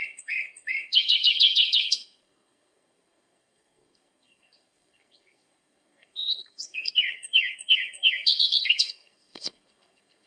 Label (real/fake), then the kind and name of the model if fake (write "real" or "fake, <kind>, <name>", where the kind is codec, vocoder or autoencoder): fake, codec, SNAC